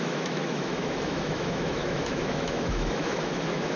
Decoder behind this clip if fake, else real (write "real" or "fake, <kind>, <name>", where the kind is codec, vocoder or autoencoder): fake, autoencoder, DAC-VAE